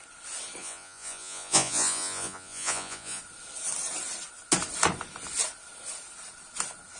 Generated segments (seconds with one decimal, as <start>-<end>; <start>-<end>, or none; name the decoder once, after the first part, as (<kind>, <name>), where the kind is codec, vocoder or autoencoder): 0.6-3.2 (vocoder, Vocos)